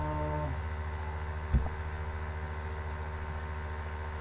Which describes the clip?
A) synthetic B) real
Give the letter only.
B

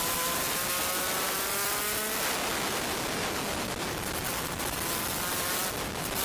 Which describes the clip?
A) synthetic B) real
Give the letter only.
B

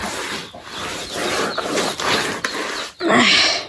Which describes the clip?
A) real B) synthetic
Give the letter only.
A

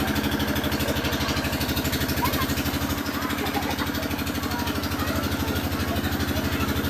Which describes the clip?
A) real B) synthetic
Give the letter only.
A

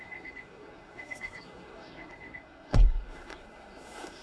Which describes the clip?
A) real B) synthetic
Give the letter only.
B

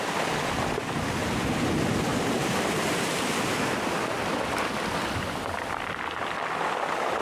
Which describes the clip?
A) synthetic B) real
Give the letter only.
B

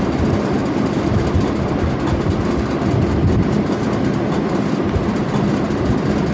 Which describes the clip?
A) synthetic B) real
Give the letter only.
B